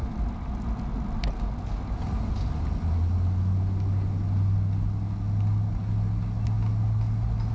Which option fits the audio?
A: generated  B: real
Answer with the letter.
B